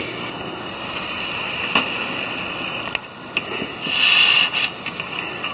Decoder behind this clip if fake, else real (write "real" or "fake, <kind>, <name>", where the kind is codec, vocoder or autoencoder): real